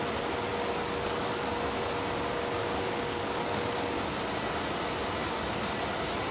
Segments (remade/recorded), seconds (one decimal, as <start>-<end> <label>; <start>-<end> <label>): 0.0-0.5 recorded; 0.5-1.5 remade; 1.5-2.6 recorded; 2.6-3.9 remade; 3.9-6.3 recorded